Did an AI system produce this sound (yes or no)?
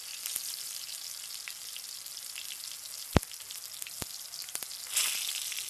no